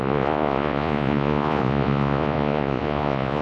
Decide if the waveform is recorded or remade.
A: remade